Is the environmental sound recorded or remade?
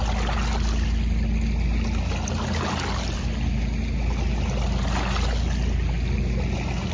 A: recorded